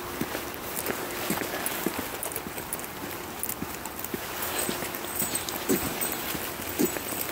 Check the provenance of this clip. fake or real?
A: real